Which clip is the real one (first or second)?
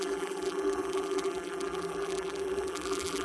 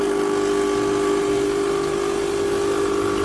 second